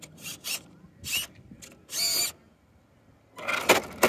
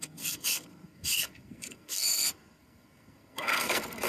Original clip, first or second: first